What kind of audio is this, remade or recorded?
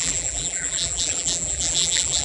remade